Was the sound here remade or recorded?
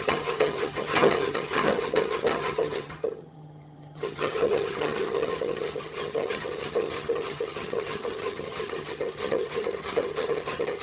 remade